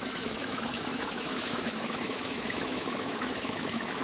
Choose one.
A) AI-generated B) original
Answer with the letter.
A